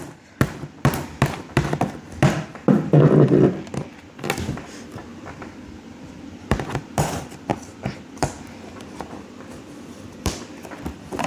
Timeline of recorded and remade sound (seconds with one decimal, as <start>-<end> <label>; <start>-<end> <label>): 0.0-7.5 remade; 7.5-8.1 recorded; 8.1-11.3 remade